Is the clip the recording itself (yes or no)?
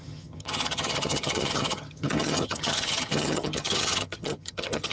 no